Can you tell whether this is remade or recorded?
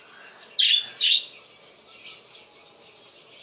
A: recorded